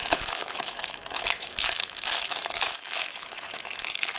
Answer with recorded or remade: remade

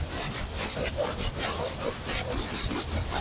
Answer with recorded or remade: recorded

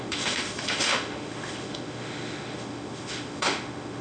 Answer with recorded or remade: remade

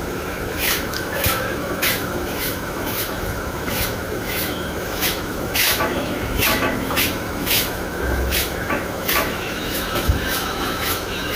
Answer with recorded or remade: remade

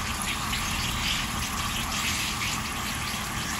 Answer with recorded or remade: recorded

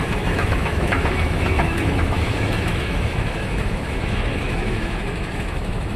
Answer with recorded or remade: remade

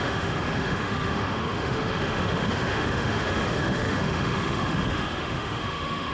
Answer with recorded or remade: remade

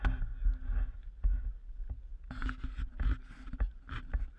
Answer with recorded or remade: recorded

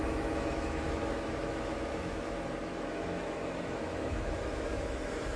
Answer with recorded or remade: remade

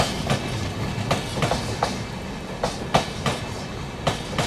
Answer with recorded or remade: recorded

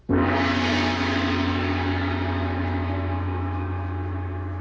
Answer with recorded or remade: remade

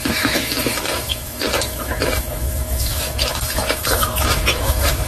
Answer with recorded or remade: remade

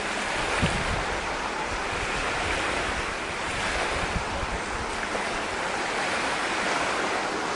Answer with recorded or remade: recorded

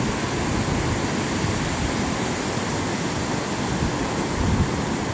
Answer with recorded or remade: recorded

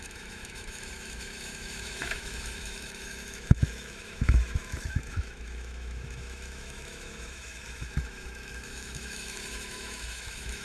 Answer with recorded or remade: remade